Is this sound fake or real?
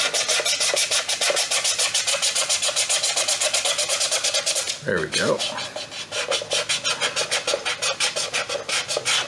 real